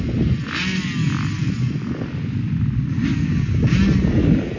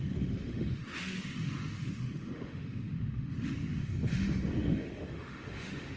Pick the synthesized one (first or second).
second